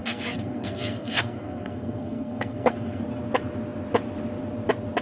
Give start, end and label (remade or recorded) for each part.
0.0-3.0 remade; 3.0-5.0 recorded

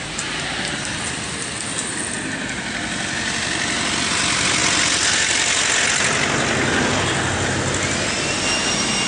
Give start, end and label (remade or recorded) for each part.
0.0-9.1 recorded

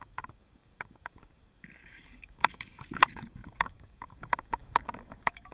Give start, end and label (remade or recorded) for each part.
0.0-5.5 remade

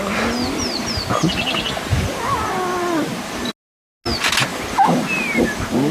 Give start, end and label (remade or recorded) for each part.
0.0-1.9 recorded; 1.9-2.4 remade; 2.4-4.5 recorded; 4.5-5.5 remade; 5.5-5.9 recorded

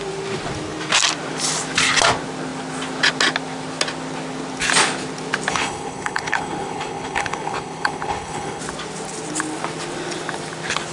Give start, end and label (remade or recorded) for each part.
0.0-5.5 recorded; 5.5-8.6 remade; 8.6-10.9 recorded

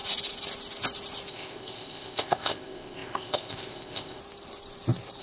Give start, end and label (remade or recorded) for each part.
0.0-1.3 recorded; 1.3-4.2 remade; 4.2-5.2 recorded

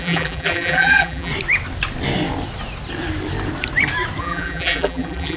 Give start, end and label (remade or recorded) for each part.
0.0-1.3 remade; 1.3-4.2 recorded; 4.2-5.4 remade

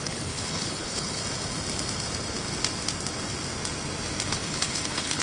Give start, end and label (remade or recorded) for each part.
0.0-1.2 remade; 1.2-4.3 recorded; 4.3-5.2 remade